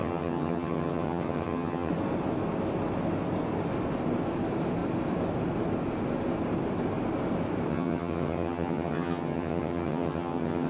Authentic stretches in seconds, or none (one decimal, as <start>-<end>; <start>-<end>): 1.9-7.7